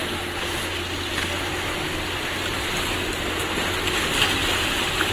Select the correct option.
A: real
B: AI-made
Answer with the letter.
A